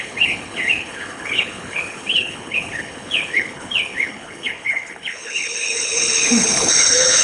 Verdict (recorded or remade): remade